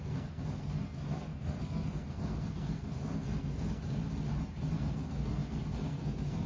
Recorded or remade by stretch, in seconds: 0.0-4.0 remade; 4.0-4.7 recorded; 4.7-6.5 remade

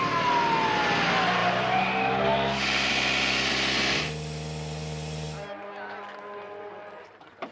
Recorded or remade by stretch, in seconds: 0.0-7.5 recorded

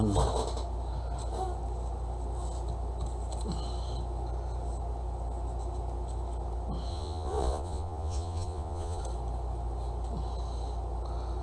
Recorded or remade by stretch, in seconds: 0.0-6.9 recorded; 6.9-9.0 remade; 9.0-11.4 recorded